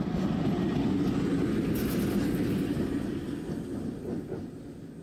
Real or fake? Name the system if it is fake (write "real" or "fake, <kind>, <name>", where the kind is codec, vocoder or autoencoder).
real